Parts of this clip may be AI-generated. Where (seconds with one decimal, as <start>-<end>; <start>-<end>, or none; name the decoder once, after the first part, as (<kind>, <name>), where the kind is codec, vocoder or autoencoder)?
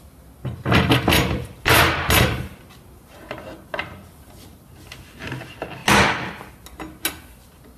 none